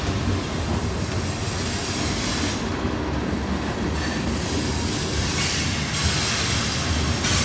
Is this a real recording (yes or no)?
yes